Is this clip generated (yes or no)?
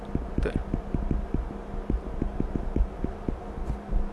no